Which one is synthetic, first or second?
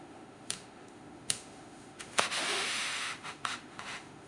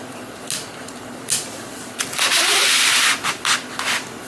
first